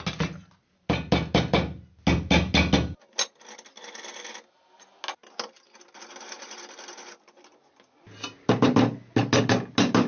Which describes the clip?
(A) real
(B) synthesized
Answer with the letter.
A